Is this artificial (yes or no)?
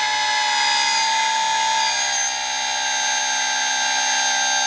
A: no